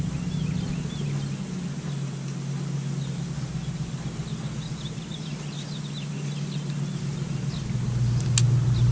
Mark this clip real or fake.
real